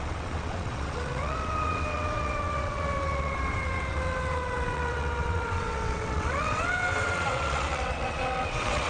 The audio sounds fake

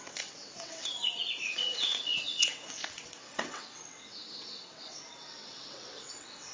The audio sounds fake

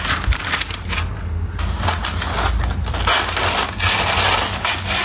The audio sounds real